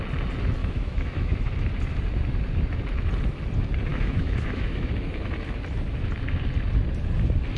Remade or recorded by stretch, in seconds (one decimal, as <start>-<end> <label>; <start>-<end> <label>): 0.0-0.6 recorded; 0.6-1.5 remade; 1.5-3.9 recorded; 3.9-4.9 remade; 4.9-7.6 recorded